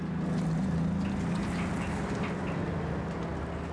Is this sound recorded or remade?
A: recorded